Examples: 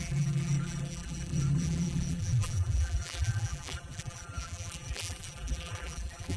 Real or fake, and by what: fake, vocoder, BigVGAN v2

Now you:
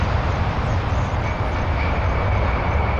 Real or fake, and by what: real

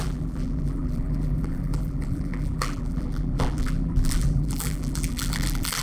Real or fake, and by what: fake, vocoder, BigVGAN v2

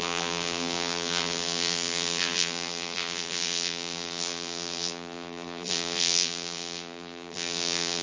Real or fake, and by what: fake, vocoder, BigVGAN v2